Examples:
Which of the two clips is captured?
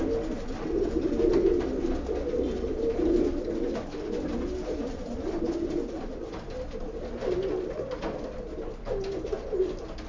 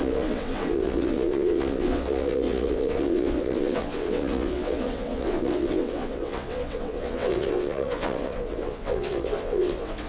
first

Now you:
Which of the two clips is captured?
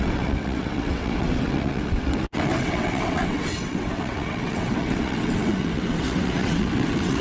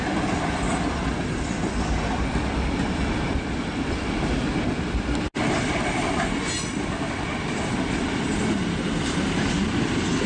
second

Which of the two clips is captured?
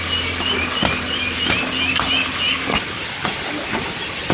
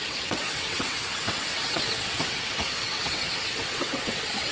first